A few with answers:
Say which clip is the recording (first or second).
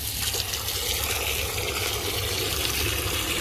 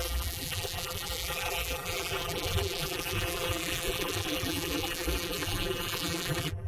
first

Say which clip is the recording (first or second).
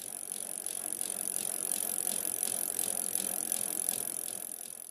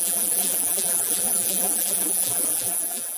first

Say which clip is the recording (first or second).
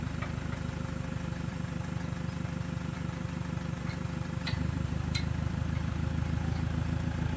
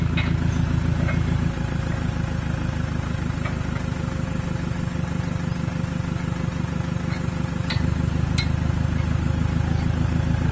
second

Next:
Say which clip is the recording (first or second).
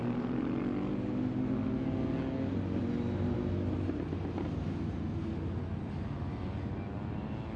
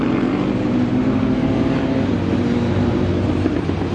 first